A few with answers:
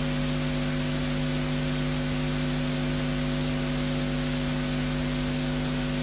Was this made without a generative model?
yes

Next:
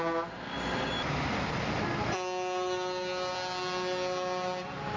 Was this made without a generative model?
yes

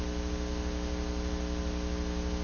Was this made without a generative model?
yes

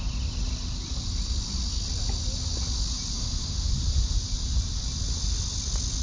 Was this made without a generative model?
yes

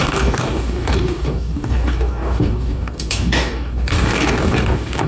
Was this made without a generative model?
no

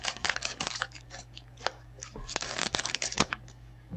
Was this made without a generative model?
no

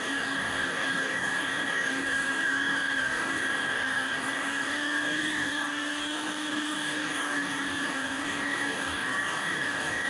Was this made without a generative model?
no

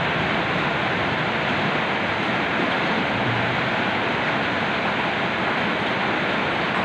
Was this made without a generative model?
yes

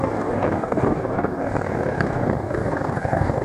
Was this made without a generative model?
no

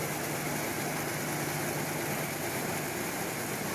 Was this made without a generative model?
yes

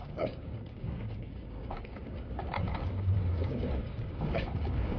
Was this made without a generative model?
no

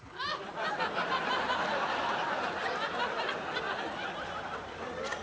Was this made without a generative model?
yes